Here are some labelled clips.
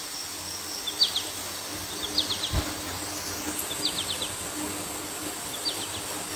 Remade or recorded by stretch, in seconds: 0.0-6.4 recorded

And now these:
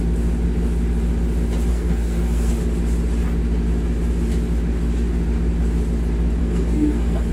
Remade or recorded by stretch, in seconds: 0.0-1.7 recorded; 1.7-2.5 remade; 2.5-6.4 recorded; 6.4-7.3 remade

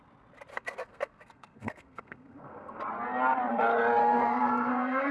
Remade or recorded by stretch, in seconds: 0.0-0.5 recorded; 0.5-2.8 remade; 2.8-4.0 recorded; 4.0-5.1 remade

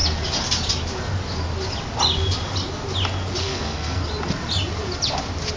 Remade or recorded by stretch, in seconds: 0.0-3.4 recorded; 3.4-4.0 remade; 4.0-5.6 recorded